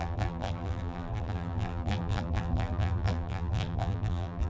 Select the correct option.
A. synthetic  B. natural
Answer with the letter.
A